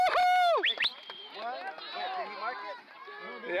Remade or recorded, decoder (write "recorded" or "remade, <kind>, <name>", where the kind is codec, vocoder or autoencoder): recorded